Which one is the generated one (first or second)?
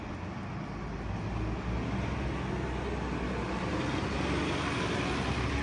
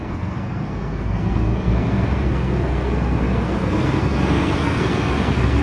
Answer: second